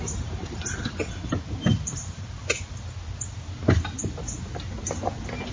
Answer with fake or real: real